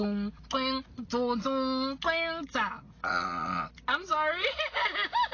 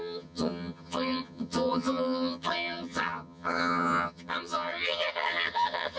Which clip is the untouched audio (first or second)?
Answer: first